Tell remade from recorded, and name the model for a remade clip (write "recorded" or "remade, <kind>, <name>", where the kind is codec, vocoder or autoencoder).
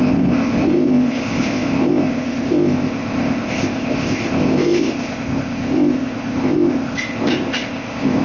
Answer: remade, codec, ZipCodec